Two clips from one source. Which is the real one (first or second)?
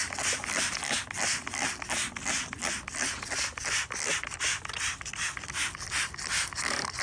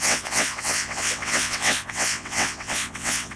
first